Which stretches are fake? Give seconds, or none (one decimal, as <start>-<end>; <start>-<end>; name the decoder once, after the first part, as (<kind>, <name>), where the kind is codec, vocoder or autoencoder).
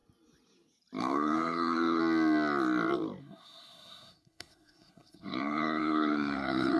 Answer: 1.0-2.0 (codec, SNAC); 3.2-6.8